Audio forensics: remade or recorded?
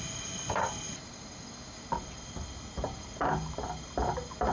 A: recorded